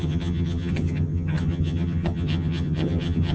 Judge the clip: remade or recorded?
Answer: remade